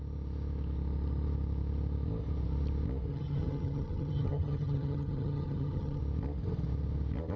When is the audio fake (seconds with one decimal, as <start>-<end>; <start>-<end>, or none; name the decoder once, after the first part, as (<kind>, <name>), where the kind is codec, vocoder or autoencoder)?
3.1-6.0 (vocoder, HiFi-GAN)